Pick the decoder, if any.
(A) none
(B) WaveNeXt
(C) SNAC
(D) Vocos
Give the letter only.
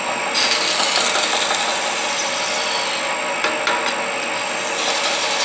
A